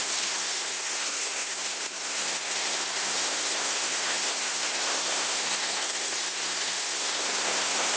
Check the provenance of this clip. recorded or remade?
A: remade